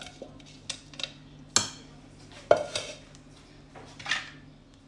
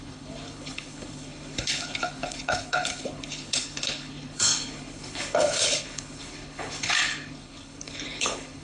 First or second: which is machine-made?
second